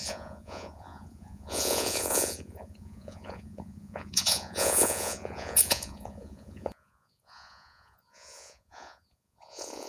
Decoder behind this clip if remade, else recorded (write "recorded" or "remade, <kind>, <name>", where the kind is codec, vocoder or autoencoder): remade, vocoder, Vocos